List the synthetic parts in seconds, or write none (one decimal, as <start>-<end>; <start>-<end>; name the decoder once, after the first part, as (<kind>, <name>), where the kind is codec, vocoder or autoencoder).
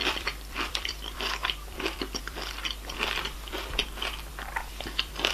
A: 0.0-3.8 (vocoder, BigVGAN v2); 4.3-5.3